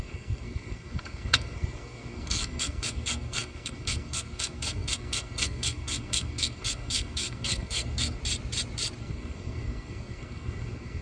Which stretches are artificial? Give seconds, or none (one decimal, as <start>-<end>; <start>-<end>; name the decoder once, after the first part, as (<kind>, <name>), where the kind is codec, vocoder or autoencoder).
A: 0.0-8.2 (codec, SNAC); 9.0-11.0